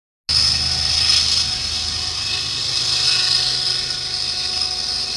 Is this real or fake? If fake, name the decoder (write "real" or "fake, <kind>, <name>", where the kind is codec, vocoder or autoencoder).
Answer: real